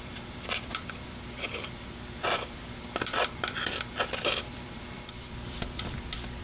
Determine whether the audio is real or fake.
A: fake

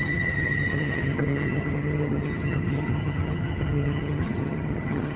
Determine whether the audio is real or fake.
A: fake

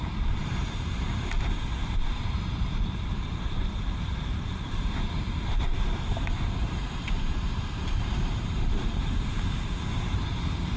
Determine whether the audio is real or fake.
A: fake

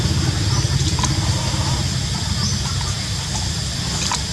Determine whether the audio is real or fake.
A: real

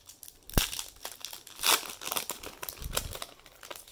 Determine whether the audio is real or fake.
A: real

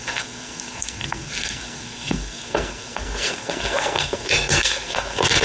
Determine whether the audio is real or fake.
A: fake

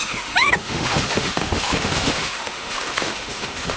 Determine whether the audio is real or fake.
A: fake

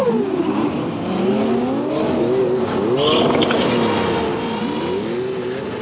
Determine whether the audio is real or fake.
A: real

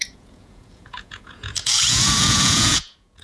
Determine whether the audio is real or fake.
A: fake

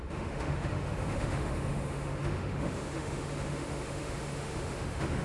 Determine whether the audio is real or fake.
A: fake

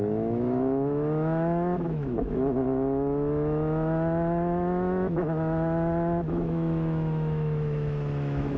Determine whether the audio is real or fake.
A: fake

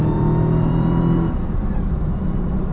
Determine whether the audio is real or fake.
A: fake